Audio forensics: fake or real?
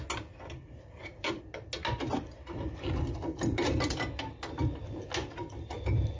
real